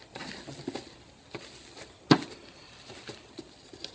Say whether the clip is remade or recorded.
recorded